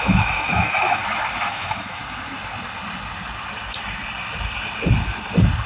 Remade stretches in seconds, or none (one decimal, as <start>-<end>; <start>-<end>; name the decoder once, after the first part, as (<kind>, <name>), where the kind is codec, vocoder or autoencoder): 0.0-1.0 (autoencoder, DAC-VAE); 1.5-2.0